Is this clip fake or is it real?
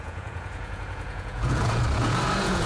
fake